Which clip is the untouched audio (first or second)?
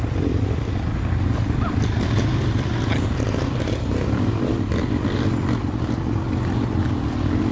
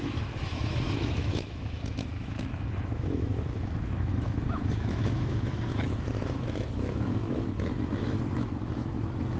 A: first